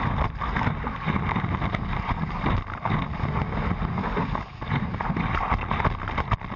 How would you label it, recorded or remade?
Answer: recorded